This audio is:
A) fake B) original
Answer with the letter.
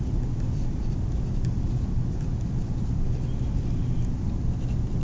A